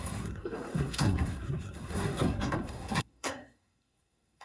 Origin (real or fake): fake